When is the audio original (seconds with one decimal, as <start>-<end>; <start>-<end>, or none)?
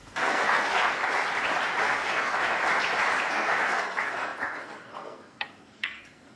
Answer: 1.0-1.8; 2.6-3.3